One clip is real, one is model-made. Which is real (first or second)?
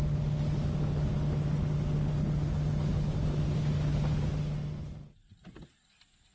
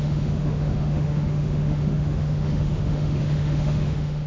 first